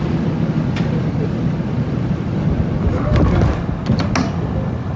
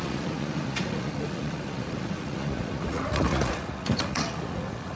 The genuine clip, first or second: first